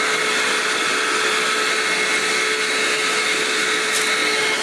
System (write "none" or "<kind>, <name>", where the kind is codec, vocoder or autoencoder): none